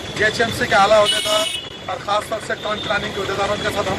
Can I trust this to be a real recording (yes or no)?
no